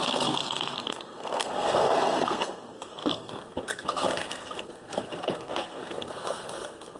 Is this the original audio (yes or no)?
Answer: no